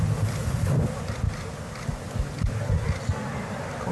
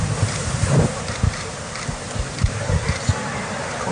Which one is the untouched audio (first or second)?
first